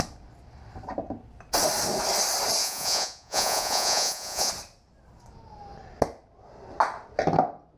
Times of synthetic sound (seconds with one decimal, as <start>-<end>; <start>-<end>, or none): 2.6-4.5